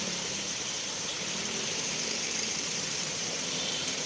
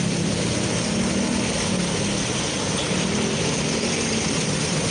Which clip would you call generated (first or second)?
first